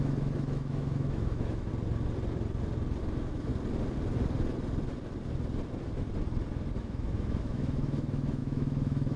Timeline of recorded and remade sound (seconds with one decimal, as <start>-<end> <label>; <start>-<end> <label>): 0.0-1.7 remade; 1.7-3.0 recorded; 3.0-3.5 remade; 3.5-6.8 recorded; 6.8-9.2 remade